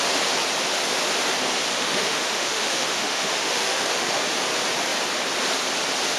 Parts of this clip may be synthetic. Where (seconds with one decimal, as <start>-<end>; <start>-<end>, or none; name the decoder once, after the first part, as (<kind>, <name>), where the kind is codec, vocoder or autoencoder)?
1.7-4.2 (autoencoder, DAC-VAE)